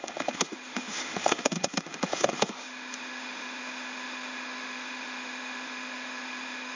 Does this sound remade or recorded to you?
remade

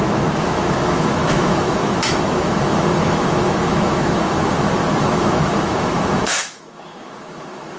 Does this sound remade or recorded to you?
remade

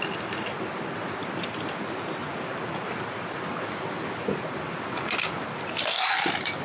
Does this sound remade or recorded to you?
recorded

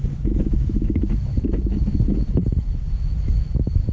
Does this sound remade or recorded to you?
remade